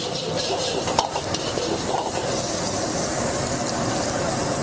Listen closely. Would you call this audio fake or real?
real